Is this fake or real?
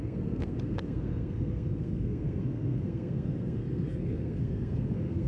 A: fake